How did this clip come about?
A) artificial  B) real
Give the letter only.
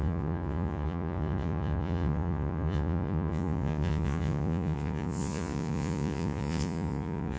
A